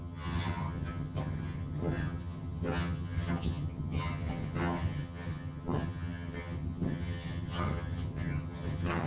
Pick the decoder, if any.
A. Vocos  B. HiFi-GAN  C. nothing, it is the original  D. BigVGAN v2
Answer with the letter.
B